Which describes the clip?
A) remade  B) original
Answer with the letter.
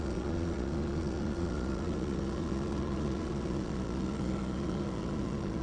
A